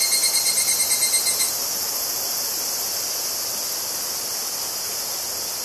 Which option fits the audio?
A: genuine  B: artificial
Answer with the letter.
A